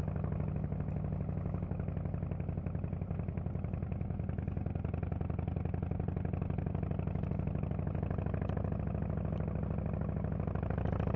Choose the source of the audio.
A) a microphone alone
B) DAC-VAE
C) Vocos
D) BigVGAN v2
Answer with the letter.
A